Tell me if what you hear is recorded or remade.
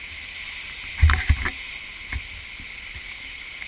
recorded